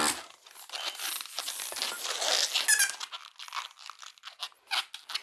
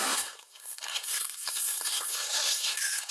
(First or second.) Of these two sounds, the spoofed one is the second